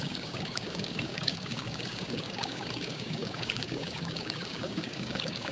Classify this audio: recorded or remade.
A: remade